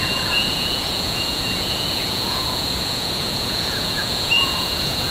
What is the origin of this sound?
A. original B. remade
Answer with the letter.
B